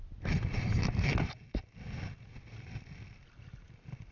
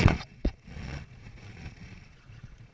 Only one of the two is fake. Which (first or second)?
second